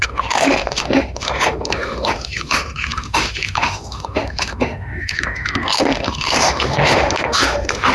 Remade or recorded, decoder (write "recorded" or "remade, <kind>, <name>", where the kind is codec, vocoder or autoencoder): remade, autoencoder, DAC-VAE